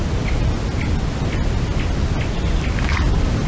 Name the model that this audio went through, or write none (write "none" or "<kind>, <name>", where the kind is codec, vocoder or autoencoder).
vocoder, BigVGAN v2